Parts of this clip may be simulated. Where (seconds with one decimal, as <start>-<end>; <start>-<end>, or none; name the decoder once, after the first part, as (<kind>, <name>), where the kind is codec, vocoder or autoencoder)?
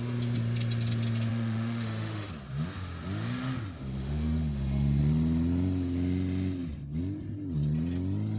1.3-2.3 (autoencoder, DAC-VAE); 4.0-5.0